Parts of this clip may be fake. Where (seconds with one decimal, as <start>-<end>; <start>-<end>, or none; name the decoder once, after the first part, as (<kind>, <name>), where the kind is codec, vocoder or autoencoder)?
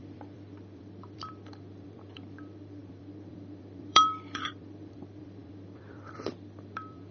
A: 0.0-7.1 (vocoder, BigVGAN v2)